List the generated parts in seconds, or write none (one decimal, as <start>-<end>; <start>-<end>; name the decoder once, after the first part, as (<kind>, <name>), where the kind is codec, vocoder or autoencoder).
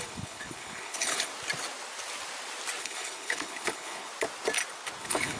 0.0-1.3 (codec, HILCodec); 2.8-4.1; 5.0-5.4